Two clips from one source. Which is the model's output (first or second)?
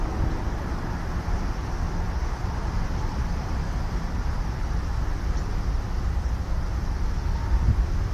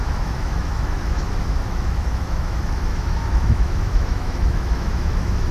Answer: second